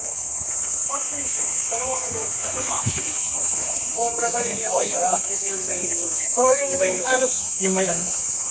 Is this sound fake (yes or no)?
yes